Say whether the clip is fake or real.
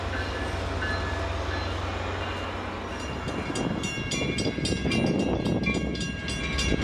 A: real